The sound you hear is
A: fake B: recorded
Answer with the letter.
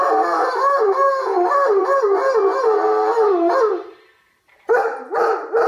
A